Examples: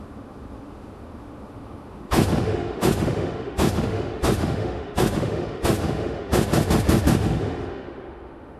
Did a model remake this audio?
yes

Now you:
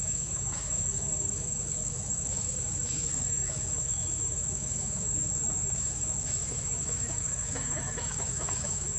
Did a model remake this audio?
yes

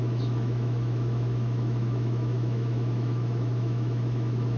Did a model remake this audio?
yes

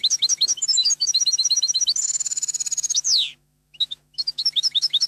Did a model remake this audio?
yes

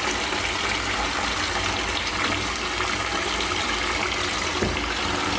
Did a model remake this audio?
no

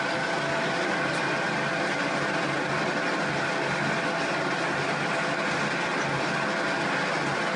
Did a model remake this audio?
no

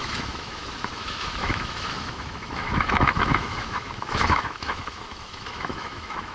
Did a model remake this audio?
yes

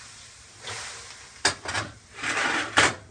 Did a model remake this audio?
no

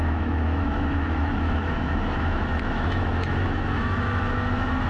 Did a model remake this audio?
yes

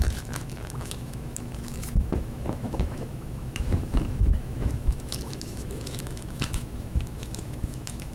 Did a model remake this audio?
yes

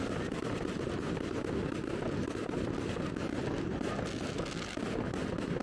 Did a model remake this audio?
no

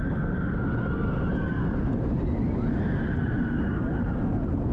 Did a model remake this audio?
no